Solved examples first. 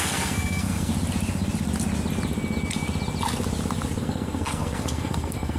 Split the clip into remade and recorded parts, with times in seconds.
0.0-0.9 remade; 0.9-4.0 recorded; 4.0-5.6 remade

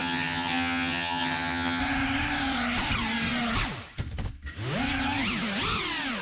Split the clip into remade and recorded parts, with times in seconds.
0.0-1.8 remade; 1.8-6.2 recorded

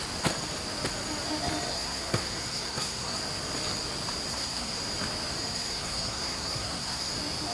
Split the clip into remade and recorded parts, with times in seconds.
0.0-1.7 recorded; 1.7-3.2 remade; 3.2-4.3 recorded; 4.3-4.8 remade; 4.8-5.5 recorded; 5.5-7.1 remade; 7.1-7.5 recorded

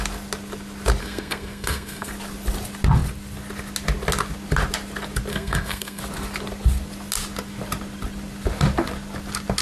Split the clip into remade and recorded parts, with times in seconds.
0.0-1.0 recorded; 1.0-2.1 remade; 2.1-5.3 recorded; 5.3-6.0 remade; 6.0-9.6 recorded

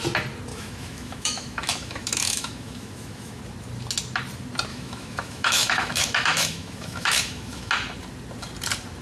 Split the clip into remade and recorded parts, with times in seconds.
0.0-0.5 recorded; 0.5-3.4 remade; 3.4-4.7 recorded; 4.7-7.7 remade; 7.7-9.0 recorded

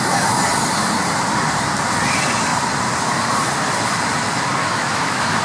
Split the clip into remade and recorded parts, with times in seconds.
0.0-4.6 recorded; 4.6-5.4 remade